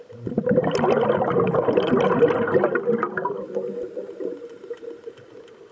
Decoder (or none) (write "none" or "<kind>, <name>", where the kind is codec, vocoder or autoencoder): none